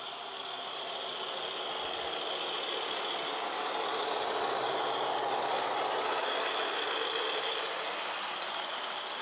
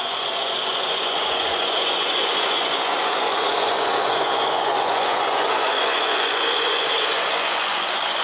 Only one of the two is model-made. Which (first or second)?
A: second